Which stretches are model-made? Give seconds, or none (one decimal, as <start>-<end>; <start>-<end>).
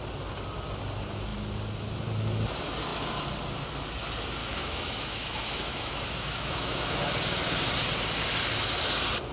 4.4-7.0